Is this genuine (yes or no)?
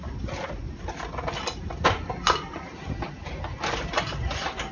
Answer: yes